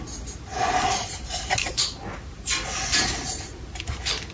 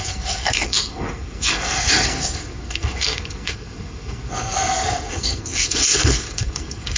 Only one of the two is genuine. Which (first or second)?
first